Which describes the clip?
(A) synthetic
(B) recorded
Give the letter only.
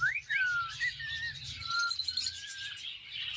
B